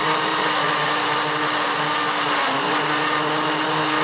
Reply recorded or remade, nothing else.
recorded